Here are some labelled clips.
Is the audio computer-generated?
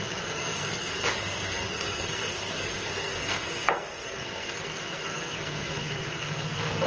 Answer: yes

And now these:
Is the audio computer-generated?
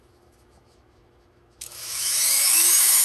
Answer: yes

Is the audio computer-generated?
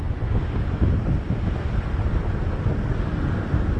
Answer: no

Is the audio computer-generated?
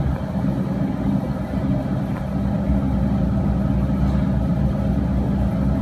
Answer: no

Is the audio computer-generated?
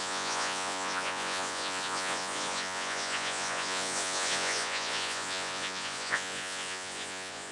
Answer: yes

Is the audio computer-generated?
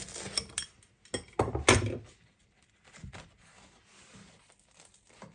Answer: no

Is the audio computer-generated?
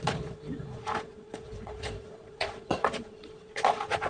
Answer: yes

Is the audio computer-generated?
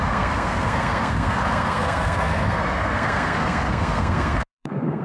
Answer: yes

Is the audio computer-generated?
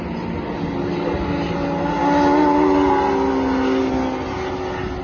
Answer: no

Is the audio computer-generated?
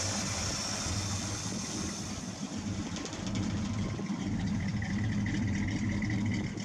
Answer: no